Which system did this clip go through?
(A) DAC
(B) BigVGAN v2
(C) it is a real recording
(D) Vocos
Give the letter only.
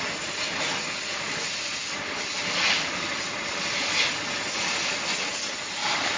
C